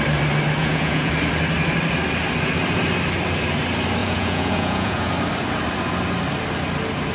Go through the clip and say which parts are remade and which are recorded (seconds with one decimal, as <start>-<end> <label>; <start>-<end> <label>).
0.0-0.6 recorded; 0.6-1.1 remade; 1.1-4.0 recorded; 4.0-5.1 remade; 5.1-7.1 recorded